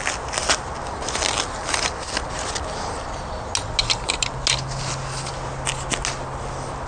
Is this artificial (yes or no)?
no